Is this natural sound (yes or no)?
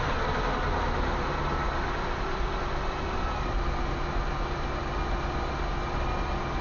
yes